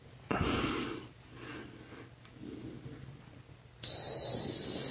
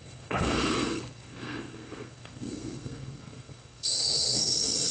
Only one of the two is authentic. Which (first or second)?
first